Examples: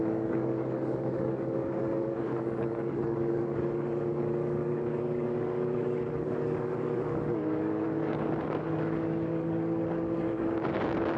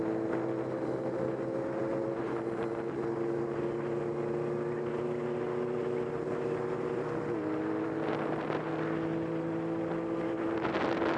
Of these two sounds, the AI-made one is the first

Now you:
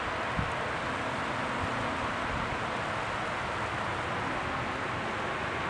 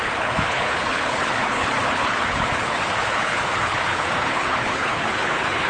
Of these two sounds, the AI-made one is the second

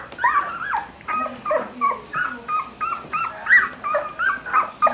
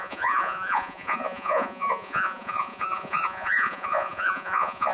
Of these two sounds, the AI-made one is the second